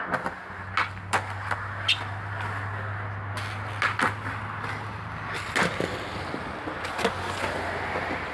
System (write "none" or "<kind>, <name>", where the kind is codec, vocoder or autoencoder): none